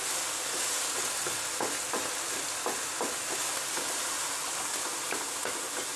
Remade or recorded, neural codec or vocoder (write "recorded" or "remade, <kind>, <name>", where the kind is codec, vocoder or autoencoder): recorded